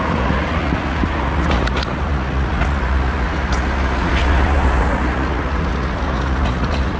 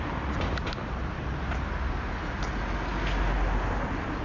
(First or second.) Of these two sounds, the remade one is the first